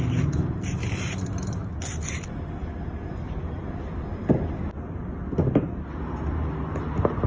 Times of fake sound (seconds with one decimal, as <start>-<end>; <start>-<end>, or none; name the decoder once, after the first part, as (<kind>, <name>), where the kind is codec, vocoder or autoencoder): none